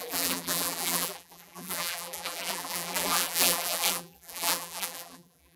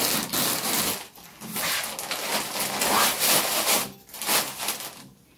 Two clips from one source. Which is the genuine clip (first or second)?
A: second